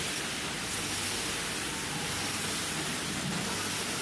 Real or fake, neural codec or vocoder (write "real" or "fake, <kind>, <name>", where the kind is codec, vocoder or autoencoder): real